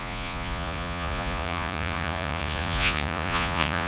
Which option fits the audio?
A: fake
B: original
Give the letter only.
A